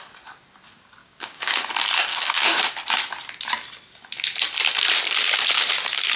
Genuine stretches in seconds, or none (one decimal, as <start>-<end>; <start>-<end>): 0.0-1.0; 1.6-2.1; 2.6-6.2